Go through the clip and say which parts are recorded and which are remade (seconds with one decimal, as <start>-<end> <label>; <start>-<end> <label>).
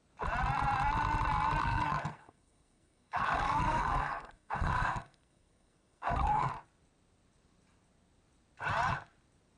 0.0-1.6 recorded; 1.6-6.5 remade; 6.5-9.6 recorded